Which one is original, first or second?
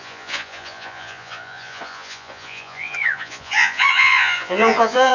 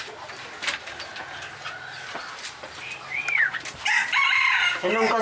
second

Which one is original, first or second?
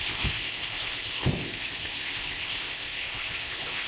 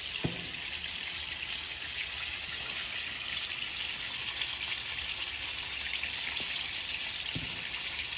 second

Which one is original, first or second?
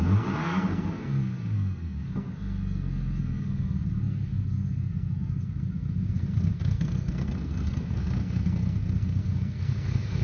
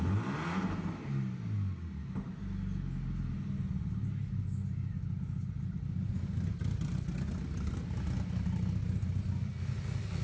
second